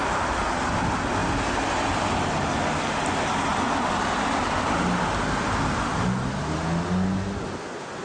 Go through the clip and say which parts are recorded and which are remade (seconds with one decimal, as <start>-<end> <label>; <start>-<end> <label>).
0.0-8.0 recorded